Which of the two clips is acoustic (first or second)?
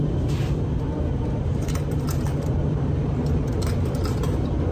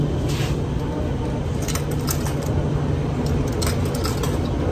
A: second